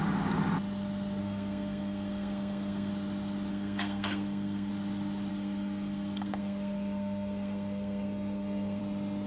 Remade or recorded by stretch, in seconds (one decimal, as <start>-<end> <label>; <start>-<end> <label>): 0.0-1.2 recorded; 1.2-2.9 remade; 2.9-3.5 recorded; 3.5-4.7 remade; 4.7-5.3 recorded; 5.3-8.8 remade; 8.8-9.3 recorded